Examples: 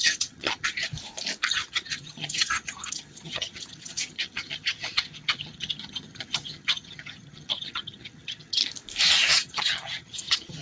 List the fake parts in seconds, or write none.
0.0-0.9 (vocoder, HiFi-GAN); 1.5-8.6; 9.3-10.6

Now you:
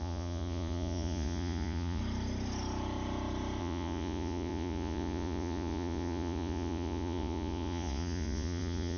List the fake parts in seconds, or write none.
0.0-2.0 (vocoder, Vocos); 3.6-9.0

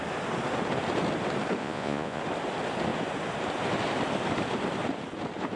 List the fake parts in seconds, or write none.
1.6-2.2 (vocoder, Vocos)

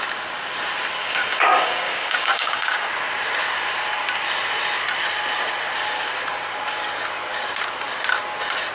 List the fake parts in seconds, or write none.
1.0-2.9 (codec, DAC)

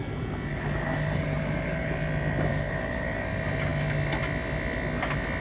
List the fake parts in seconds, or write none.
0.5-1.9 (codec, DAC); 2.5-3.3